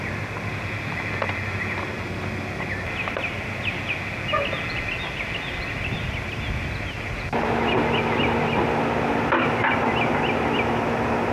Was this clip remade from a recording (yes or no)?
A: no